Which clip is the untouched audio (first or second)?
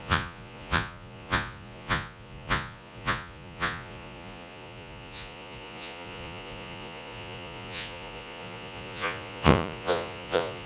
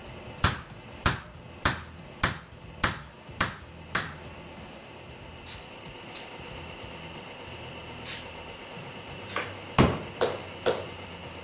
second